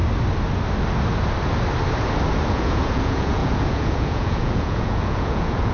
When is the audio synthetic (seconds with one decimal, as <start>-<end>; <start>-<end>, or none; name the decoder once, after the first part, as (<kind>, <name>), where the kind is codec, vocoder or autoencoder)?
2.5-5.7 (vocoder, Vocos)